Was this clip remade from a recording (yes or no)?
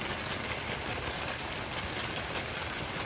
no